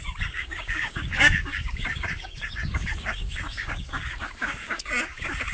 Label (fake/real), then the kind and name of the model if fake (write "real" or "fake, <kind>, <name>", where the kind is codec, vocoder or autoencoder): fake, codec, DAC